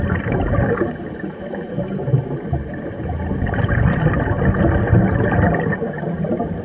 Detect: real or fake real